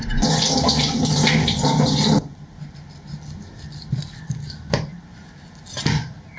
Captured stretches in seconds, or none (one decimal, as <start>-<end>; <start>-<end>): 0.0-6.4